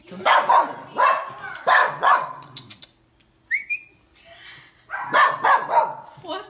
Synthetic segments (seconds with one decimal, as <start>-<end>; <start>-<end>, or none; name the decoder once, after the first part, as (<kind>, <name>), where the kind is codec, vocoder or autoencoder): 1.8-2.8 (vocoder, WaveNeXt)